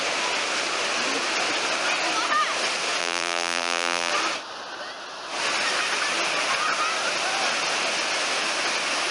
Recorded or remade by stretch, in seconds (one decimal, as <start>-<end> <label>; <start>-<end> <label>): 0.0-3.0 recorded; 3.0-4.1 remade; 4.1-9.1 recorded